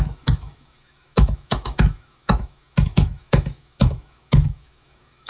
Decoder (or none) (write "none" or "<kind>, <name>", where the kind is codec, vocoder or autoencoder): autoencoder, DAC-VAE